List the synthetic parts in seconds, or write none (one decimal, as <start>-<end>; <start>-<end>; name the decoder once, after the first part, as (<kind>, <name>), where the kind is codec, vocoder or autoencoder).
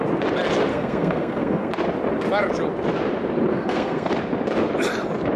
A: 0.7-1.7 (codec, SNAC); 3.5-4.1